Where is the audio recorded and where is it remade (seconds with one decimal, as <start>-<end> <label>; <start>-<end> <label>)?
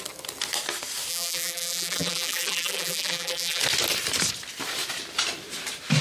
0.0-1.1 recorded; 1.1-3.6 remade; 3.6-6.0 recorded